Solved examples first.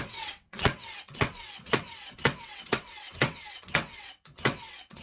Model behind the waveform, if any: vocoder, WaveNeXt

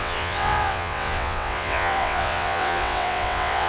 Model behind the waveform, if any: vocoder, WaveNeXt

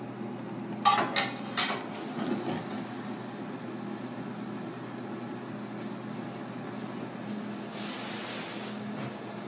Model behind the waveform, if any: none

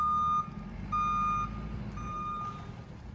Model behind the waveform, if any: none